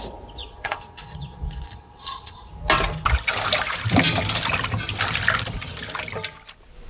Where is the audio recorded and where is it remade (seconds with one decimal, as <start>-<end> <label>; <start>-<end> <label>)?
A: 0.0-0.4 recorded; 0.4-2.5 remade; 2.5-6.9 recorded